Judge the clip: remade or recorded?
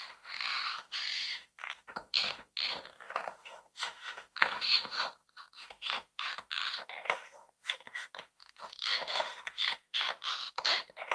remade